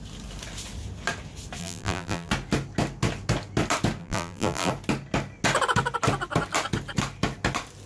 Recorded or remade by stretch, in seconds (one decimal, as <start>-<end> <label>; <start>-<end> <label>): 0.0-1.6 recorded; 1.6-2.3 remade; 2.3-4.0 recorded; 4.0-4.7 remade; 4.7-7.9 recorded